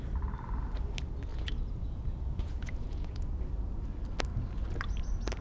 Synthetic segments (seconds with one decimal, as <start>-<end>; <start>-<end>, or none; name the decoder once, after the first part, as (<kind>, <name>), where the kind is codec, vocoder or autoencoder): 1.3-3.4 (vocoder, Vocos)